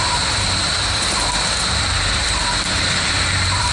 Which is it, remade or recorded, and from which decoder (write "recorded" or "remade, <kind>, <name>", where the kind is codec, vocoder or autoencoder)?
remade, vocoder, BigVGAN v2